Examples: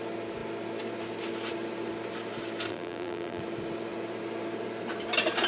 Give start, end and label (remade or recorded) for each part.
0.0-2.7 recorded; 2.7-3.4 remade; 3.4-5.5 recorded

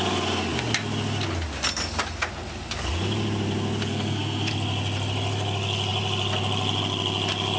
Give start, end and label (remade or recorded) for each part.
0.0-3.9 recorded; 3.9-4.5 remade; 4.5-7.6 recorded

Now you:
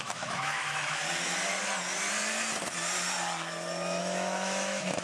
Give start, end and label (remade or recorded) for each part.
0.0-1.0 remade; 1.0-4.0 recorded; 4.0-5.0 remade

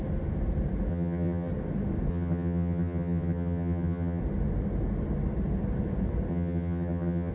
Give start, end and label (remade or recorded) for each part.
0.0-0.9 recorded; 0.9-1.5 remade; 1.5-2.1 recorded; 2.1-4.2 remade; 4.2-6.3 recorded; 6.3-7.3 remade